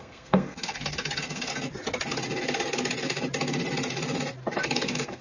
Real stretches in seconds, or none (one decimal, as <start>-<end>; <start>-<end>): 1.5-4.6